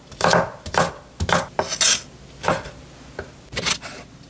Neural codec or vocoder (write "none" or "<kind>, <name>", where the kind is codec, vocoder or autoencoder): none